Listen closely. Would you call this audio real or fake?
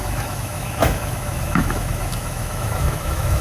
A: fake